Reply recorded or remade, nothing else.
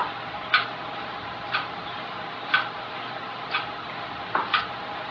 recorded